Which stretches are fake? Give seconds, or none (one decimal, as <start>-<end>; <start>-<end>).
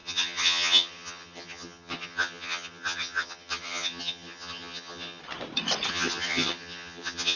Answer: 0.0-5.2; 5.9-7.4